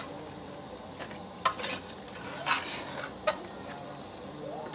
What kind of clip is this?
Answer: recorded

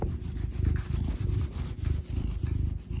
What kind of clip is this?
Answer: recorded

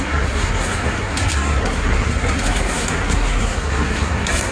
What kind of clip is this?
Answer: remade